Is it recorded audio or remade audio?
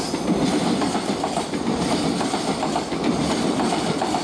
recorded